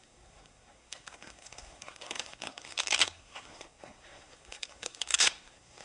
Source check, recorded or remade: remade